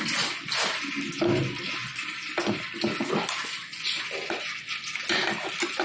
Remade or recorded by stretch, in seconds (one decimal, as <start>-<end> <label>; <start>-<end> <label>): 0.0-5.8 recorded